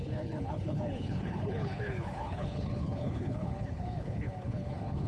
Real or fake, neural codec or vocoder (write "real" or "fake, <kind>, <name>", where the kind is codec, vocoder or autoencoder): fake, codec, HILCodec